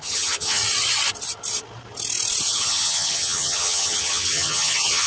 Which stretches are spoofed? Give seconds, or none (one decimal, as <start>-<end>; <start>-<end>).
0.0-0.6; 2.4-5.1